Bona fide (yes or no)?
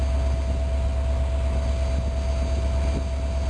yes